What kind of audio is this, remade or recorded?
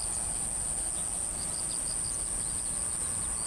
recorded